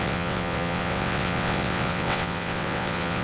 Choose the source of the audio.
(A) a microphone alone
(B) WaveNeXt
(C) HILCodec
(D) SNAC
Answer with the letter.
B